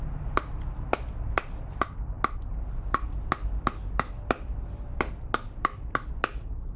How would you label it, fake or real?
real